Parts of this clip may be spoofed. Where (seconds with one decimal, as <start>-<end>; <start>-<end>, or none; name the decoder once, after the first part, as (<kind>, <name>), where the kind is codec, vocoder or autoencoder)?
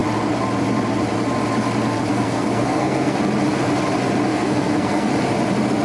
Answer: 2.1-3.2 (codec, SNAC); 4.3-5.1